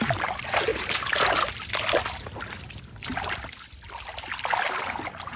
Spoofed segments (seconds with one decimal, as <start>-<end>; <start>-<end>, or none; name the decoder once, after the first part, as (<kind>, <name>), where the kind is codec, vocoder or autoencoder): none